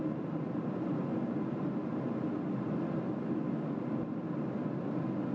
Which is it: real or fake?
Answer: real